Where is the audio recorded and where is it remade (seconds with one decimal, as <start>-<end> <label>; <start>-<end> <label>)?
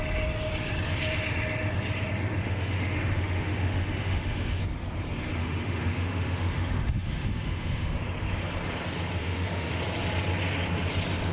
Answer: 0.0-2.4 recorded; 2.4-4.6 remade; 4.6-5.4 recorded; 5.4-8.0 remade; 8.0-9.2 recorded; 9.2-9.7 remade; 9.7-11.3 recorded